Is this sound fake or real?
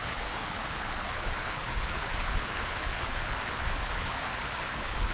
fake